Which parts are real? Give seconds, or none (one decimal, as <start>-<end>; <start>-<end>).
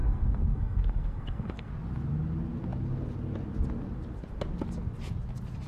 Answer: 1.7-5.7